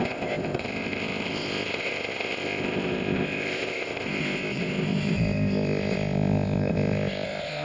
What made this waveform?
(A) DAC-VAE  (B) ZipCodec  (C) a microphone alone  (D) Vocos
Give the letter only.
B